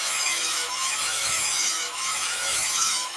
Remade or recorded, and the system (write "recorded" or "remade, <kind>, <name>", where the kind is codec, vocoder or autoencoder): remade, autoencoder, DAC-VAE